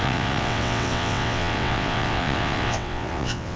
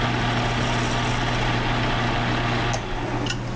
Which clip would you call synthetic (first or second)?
first